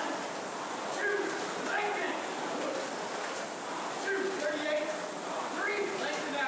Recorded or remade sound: recorded